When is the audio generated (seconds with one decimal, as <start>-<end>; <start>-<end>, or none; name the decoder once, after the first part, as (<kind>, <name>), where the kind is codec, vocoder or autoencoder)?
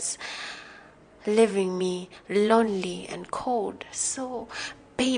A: 0.8-1.8 (vocoder, Vocos); 2.3-4.0; 4.4-5.2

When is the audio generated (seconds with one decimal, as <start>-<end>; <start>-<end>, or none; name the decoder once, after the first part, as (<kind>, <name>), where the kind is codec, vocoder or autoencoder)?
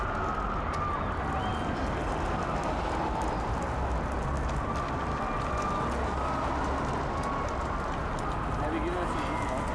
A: none